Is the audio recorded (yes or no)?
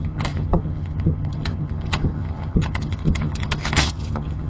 no